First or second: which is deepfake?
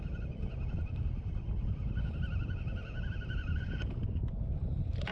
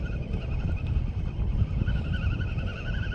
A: second